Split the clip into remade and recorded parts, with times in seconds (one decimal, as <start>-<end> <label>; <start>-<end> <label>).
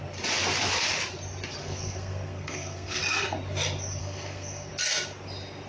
0.0-1.6 recorded; 1.6-3.0 remade; 3.0-4.0 recorded; 4.0-4.7 remade; 4.7-5.7 recorded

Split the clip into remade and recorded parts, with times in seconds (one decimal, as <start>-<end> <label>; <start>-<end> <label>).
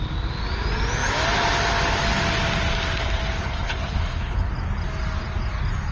0.0-3.4 recorded; 3.4-4.5 remade; 4.5-5.9 recorded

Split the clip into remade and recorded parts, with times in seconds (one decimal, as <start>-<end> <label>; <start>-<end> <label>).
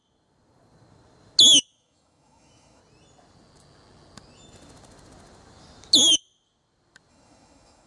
0.0-1.7 recorded; 1.7-2.8 remade; 2.8-7.1 recorded; 7.1-7.9 remade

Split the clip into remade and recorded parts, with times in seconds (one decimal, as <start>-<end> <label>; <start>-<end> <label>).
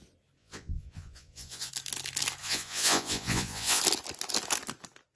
0.0-0.4 recorded; 0.4-1.7 remade; 1.7-2.4 recorded; 2.4-3.8 remade; 3.8-5.2 recorded